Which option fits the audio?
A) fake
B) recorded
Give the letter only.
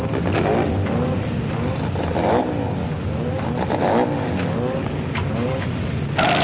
B